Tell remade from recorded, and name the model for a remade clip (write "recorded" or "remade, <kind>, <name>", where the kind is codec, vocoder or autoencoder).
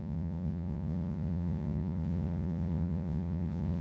remade, vocoder, Vocos